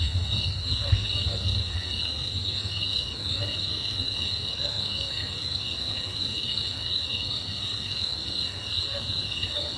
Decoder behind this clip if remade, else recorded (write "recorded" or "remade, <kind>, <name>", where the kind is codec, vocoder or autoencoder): remade, codec, SNAC